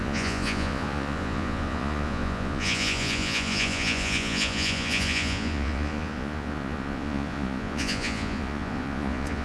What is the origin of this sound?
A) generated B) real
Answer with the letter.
A